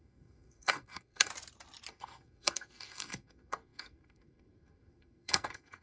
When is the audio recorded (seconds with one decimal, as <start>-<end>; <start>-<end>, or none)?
1.3-1.9